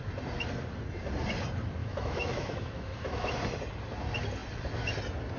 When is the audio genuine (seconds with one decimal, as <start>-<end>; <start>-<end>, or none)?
0.0-1.8; 3.3-5.4